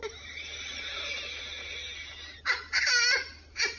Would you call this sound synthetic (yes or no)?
no